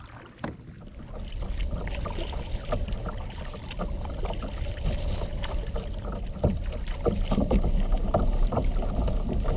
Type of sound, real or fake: real